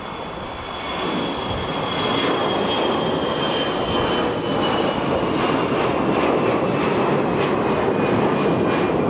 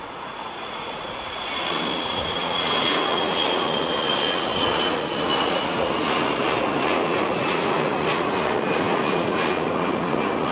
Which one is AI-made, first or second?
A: second